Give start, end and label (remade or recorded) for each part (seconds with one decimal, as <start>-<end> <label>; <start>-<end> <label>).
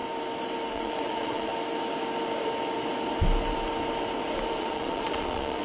0.0-0.7 recorded; 0.7-1.5 remade; 1.5-4.6 recorded; 4.6-5.6 remade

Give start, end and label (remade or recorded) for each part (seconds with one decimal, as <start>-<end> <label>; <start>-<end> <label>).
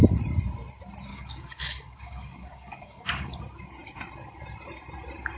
0.0-1.1 recorded; 1.1-3.4 remade; 3.4-5.4 recorded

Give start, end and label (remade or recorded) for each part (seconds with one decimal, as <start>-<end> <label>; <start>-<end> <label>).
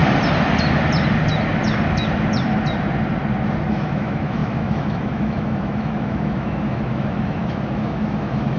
0.0-3.7 recorded; 3.7-8.6 remade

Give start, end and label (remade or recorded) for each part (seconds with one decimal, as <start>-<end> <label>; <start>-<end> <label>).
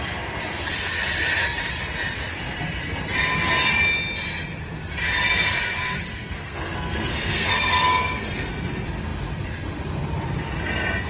0.0-6.1 recorded; 6.1-8.5 remade; 8.5-11.1 recorded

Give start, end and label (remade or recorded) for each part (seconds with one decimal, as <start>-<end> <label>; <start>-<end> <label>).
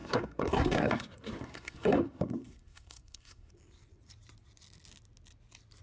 0.0-3.5 remade; 3.5-5.8 recorded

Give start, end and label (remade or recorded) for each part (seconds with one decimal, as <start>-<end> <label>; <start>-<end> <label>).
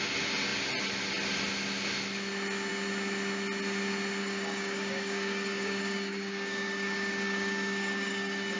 0.0-4.2 recorded; 4.2-8.6 remade